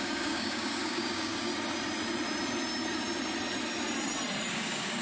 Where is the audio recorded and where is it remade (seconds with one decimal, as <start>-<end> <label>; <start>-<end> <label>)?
0.0-1.5 remade; 1.5-4.5 recorded; 4.5-5.0 remade